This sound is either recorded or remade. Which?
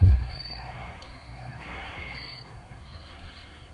remade